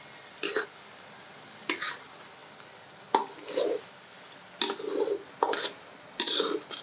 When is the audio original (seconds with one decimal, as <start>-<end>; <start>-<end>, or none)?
0.0-6.8